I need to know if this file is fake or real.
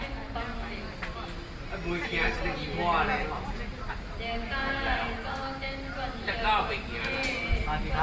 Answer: real